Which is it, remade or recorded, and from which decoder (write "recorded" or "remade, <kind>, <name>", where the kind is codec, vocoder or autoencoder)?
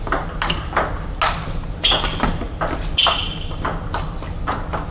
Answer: recorded